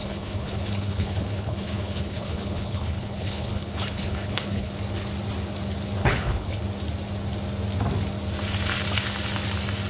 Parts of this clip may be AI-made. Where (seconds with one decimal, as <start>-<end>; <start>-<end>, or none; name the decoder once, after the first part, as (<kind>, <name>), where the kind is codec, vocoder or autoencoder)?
0.0-4.7 (codec, HILCodec); 6.0-6.6